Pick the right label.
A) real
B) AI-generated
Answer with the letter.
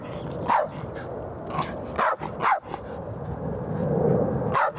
A